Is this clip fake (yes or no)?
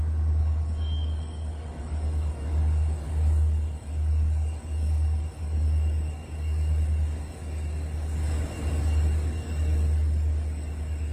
yes